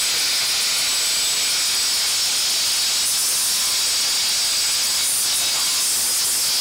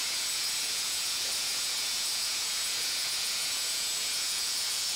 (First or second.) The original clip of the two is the first